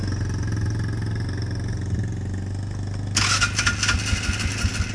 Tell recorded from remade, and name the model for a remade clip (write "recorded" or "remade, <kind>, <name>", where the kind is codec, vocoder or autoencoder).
recorded